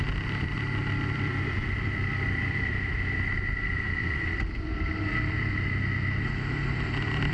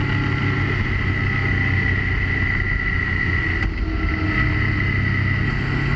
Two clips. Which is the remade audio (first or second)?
first